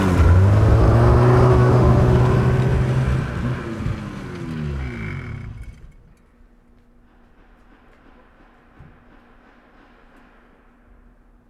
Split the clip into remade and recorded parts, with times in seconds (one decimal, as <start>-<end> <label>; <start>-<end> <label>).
0.0-1.5 recorded; 1.5-2.2 remade; 2.2-11.5 recorded